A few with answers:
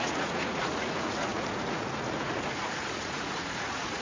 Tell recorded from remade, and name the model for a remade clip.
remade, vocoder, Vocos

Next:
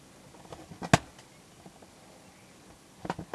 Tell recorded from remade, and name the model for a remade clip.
recorded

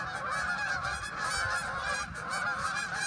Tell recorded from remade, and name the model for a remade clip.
recorded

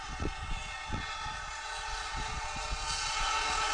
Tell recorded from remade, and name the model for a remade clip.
remade, vocoder, Vocos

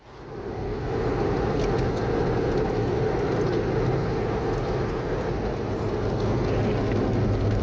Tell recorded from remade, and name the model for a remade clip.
recorded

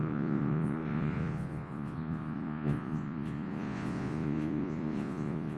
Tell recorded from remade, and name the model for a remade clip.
remade, vocoder, Vocos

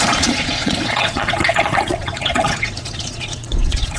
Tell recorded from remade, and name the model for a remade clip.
remade, vocoder, Vocos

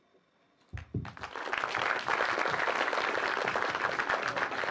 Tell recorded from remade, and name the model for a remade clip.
recorded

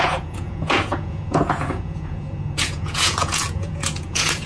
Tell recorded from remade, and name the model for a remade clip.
remade, vocoder, Vocos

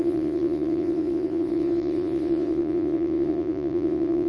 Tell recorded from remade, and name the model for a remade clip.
remade, vocoder, Vocos